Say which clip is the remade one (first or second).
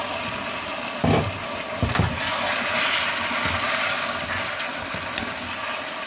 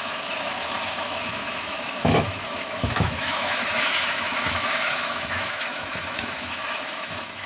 second